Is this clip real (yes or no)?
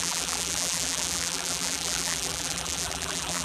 no